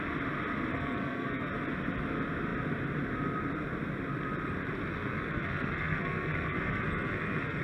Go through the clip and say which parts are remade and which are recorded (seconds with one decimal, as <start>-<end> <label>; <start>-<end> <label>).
0.0-0.7 recorded; 0.7-1.5 remade; 1.5-4.9 recorded; 4.9-7.6 remade